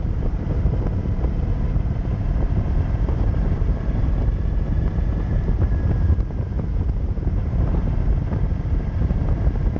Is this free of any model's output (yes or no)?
no